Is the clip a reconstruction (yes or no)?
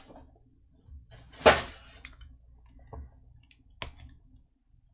no